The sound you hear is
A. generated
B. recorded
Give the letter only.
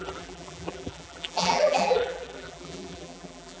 A